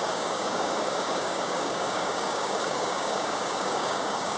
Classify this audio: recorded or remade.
remade